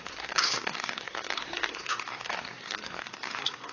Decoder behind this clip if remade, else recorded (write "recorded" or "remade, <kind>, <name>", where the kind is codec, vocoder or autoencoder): remade, codec, SNAC